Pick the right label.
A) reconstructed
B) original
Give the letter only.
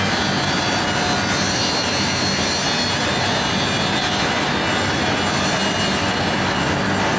B